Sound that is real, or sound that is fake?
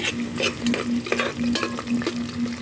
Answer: real